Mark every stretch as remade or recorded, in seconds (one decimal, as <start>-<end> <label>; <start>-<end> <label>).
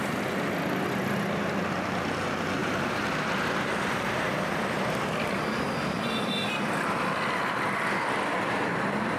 0.0-2.6 recorded; 2.6-4.3 remade; 4.3-9.2 recorded